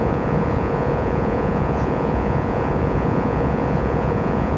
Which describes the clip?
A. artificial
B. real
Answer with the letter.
A